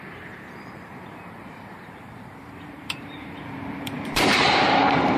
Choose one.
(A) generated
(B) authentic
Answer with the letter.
A